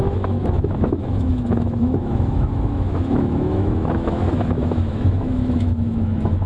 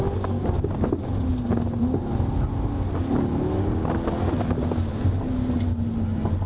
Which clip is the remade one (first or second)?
first